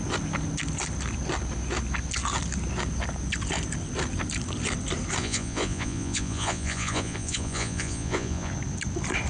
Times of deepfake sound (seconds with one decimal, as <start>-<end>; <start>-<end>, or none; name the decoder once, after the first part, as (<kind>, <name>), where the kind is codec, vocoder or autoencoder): 5.2-8.5 (vocoder, Vocos)